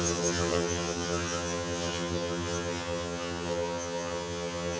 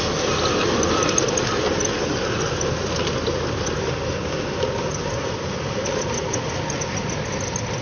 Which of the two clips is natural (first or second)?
second